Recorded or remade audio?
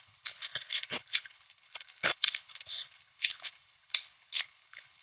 remade